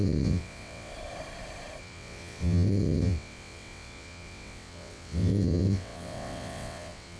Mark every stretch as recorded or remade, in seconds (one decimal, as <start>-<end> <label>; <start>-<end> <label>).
0.0-0.9 remade; 0.9-1.8 recorded; 1.8-7.2 remade